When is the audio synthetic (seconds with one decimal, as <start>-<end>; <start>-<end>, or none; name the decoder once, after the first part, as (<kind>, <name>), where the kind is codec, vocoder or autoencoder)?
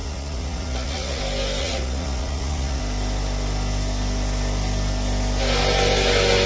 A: 0.0-1.2 (vocoder, Vocos); 1.6-2.8